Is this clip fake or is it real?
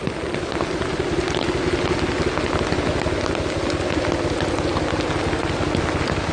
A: real